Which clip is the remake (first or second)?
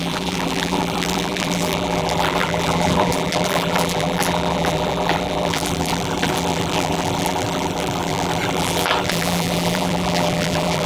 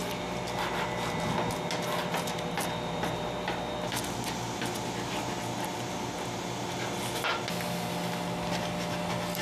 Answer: first